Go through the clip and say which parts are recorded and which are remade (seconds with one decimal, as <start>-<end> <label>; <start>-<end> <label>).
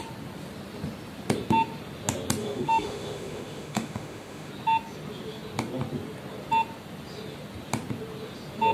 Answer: 0.0-2.4 recorded; 2.4-4.5 remade; 4.5-8.7 recorded